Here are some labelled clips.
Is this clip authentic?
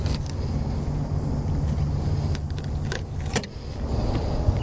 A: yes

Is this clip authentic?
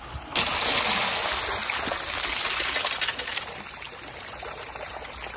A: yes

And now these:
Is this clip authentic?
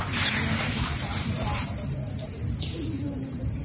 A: no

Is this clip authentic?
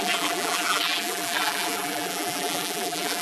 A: no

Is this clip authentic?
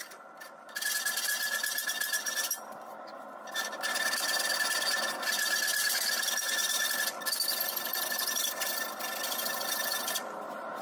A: yes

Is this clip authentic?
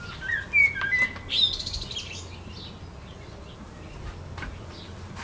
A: yes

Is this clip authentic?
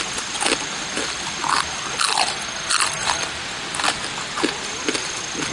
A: yes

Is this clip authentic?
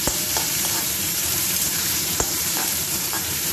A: no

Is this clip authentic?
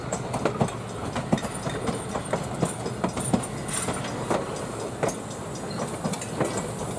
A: yes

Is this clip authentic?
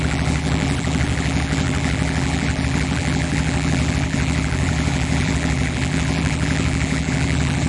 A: no